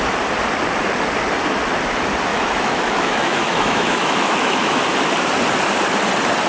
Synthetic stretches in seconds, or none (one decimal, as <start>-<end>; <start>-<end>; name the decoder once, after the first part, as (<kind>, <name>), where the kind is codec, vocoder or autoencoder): 2.3-4.8 (autoencoder, DAC-VAE)